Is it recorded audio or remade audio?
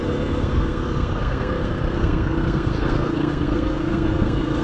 remade